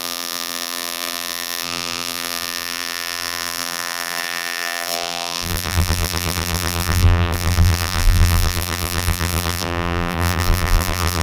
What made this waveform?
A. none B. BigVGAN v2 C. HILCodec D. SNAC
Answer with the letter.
B